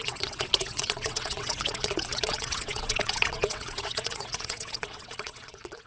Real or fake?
fake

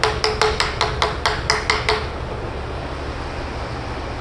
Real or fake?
real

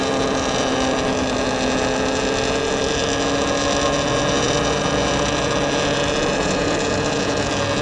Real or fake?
real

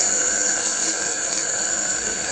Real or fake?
fake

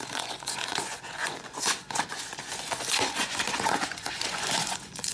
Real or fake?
fake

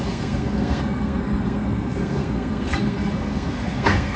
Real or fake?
fake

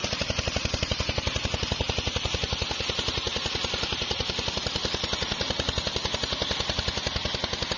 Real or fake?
real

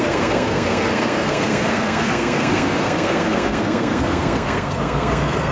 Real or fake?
fake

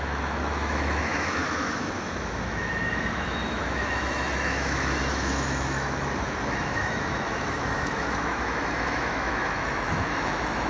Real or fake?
fake